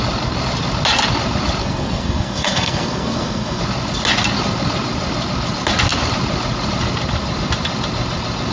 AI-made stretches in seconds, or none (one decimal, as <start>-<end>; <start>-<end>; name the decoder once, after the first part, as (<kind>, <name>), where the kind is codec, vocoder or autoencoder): 1.6-3.6 (codec, SNAC)